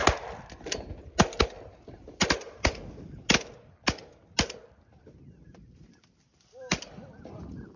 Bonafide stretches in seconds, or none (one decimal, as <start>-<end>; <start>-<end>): 0.0-7.8